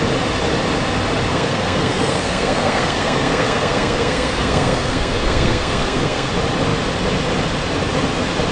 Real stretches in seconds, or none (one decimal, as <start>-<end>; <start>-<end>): 0.0-1.3; 6.3-8.5